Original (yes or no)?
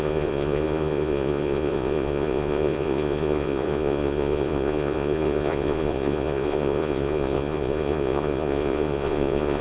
no